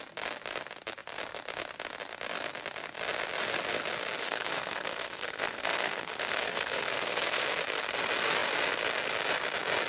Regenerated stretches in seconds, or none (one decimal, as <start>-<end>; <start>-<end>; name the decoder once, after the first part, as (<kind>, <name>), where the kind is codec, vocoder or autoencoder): 4.2-7.5 (codec, SNAC)